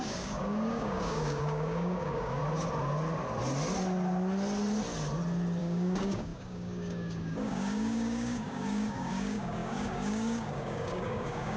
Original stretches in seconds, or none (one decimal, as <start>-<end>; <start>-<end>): 2.4-5.6